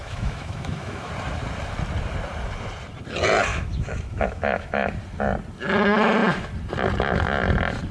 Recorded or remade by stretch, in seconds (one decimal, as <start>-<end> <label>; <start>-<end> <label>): 0.0-1.1 remade; 1.1-3.5 recorded; 3.5-4.9 remade; 4.9-7.9 recorded